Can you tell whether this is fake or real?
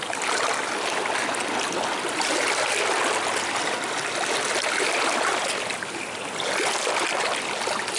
real